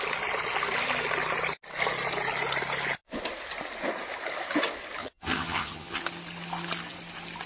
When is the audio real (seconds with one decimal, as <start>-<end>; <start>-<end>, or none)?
0.0-5.0; 6.0-7.5